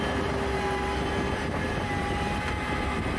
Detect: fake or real real